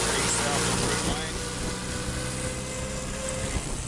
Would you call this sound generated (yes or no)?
no